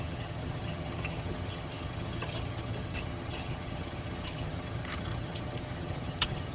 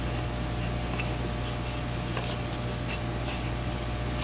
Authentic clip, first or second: second